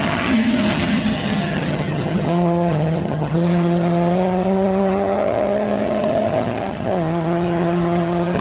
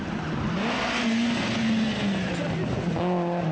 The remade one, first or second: first